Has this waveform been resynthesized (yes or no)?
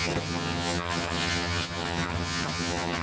yes